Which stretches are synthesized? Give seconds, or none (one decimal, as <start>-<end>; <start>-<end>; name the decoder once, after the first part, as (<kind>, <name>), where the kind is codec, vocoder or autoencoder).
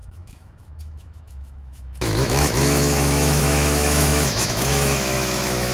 0.0-5.7 (autoencoder, DAC-VAE)